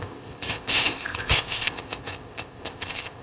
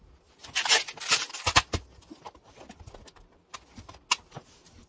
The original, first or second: second